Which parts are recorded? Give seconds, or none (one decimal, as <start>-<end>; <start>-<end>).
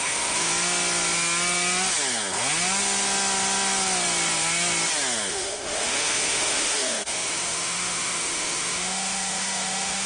0.5-5.3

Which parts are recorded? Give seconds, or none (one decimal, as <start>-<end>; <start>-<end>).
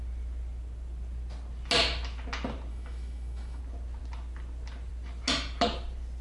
0.0-2.7; 3.6-6.2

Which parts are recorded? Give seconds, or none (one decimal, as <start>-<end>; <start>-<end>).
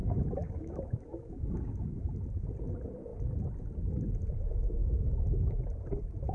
2.1-4.8; 5.6-6.3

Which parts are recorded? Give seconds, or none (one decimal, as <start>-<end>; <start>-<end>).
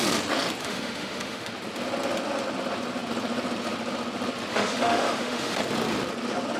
0.0-0.6; 1.5-4.5; 5.6-6.6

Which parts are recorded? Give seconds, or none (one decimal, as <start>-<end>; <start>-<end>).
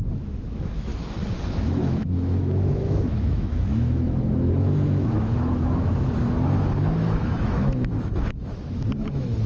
0.9-1.6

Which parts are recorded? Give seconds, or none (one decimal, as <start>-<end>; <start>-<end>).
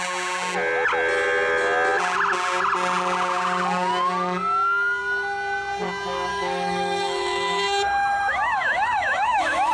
0.0-6.3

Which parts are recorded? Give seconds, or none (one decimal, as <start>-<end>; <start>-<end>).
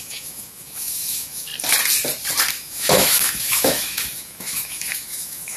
1.5-2.5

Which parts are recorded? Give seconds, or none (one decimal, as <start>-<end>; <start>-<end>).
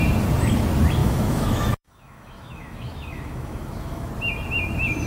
0.0-1.0; 4.1-5.1